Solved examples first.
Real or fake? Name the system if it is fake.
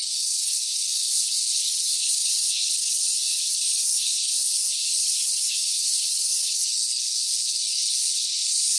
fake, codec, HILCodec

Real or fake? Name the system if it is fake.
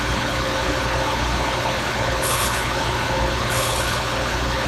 fake, codec, HILCodec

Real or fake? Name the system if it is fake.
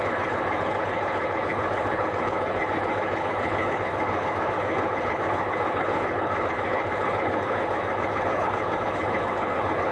fake, codec, HILCodec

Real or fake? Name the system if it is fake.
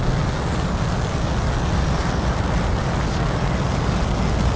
real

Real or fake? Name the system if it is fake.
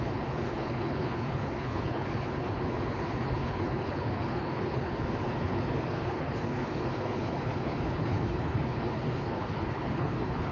fake, codec, HILCodec